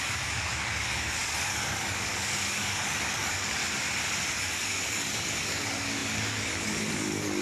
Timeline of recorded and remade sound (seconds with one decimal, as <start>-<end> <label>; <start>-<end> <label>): 0.0-3.6 remade; 3.6-4.4 recorded; 4.4-7.4 remade